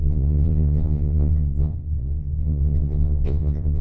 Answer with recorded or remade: remade